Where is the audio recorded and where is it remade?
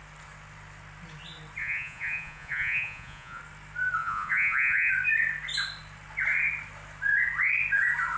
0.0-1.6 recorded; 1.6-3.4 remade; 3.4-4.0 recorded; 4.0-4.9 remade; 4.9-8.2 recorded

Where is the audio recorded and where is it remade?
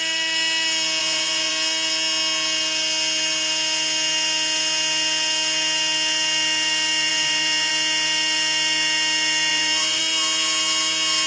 0.0-1.0 recorded; 1.0-1.5 remade; 1.5-7.1 recorded; 7.1-7.7 remade; 7.7-9.5 recorded; 9.5-10.0 remade; 10.0-11.3 recorded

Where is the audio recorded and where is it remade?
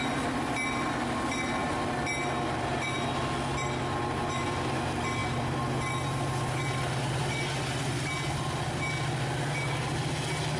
0.0-10.6 recorded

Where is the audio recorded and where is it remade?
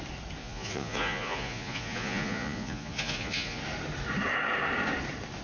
0.0-0.4 recorded; 0.4-3.6 remade; 3.6-5.4 recorded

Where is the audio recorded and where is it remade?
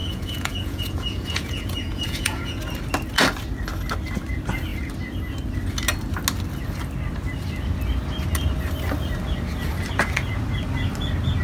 0.0-2.6 remade; 2.6-11.4 recorded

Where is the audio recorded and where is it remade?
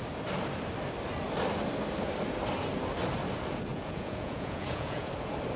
0.0-3.7 recorded; 3.7-5.1 remade; 5.1-5.6 recorded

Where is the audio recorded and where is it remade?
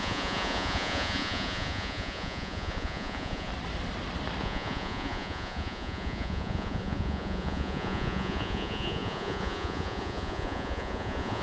0.0-3.5 remade; 3.5-4.4 recorded; 4.4-11.4 remade